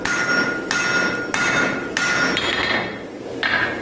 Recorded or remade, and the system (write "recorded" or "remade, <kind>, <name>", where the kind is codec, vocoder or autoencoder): recorded